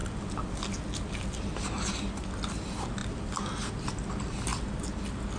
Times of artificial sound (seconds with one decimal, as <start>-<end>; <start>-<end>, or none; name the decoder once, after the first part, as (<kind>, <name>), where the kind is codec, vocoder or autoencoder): none